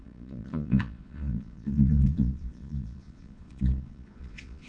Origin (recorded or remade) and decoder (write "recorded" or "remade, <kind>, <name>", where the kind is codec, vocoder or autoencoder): remade, vocoder, Vocos